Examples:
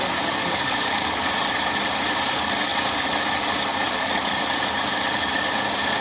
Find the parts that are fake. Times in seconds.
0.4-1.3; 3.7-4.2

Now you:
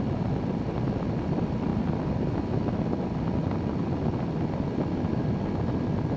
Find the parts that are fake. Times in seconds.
none

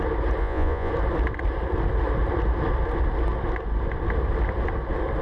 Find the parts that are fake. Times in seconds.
0.4-0.9

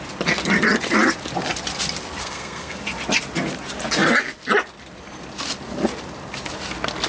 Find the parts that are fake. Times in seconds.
2.2-2.8

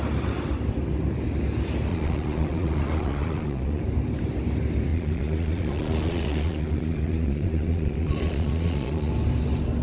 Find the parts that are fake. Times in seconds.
1.9-3.8; 4.9-9.1

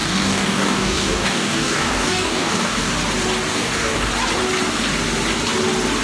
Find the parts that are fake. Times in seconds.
0.0-2.9; 3.5-4.1